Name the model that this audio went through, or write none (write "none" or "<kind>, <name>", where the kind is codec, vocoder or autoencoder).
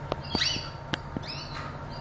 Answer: none